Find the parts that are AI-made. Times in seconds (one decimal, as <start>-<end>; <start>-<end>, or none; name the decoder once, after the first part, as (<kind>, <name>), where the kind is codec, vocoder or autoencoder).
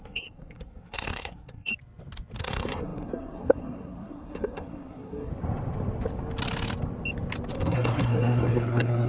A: 0.0-1.7 (codec, SNAC); 2.4-5.3; 7.5-9.1